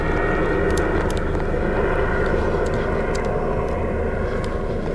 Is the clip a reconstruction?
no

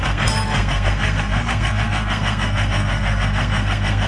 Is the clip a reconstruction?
yes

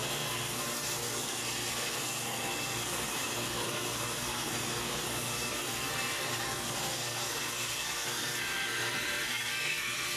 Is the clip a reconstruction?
yes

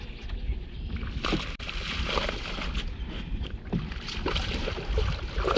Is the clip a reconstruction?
no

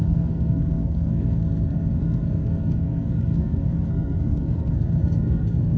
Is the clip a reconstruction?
yes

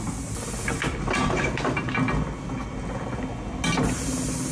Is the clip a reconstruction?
no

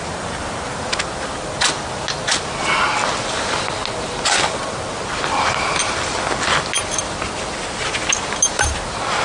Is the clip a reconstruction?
no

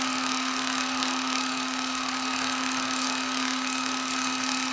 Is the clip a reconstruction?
yes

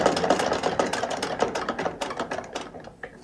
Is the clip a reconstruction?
no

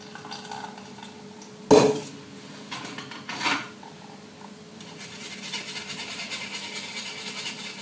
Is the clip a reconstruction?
no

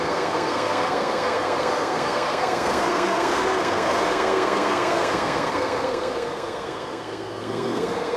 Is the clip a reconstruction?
yes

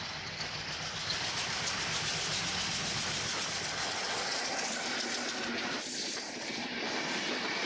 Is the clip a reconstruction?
no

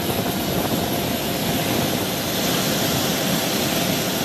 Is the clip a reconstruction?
no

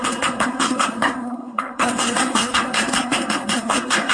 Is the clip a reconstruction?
yes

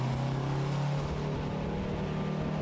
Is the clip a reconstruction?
no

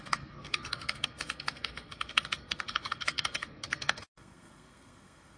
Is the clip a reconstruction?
yes